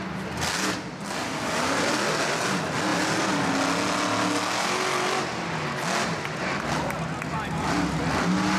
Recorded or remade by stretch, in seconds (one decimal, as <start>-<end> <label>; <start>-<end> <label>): 0.0-8.6 recorded